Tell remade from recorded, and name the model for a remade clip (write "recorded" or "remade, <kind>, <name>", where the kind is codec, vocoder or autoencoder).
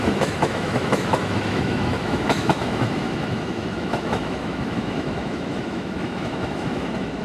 remade, autoencoder, DAC-VAE